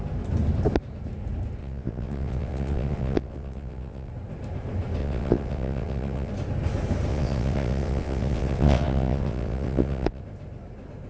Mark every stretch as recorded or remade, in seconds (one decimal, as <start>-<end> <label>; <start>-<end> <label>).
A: 0.0-1.6 recorded; 1.6-4.1 remade; 4.1-5.0 recorded; 5.0-6.3 remade; 6.3-7.1 recorded; 7.1-10.2 remade; 10.2-11.1 recorded